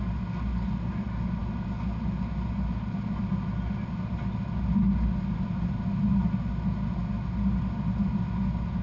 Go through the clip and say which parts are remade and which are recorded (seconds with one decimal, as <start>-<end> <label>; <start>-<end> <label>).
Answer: 0.0-8.8 recorded